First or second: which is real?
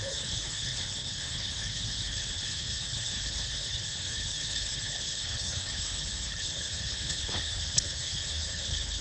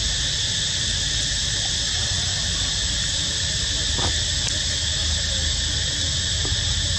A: second